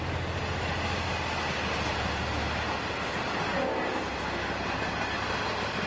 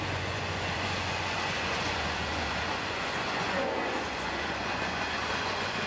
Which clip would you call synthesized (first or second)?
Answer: second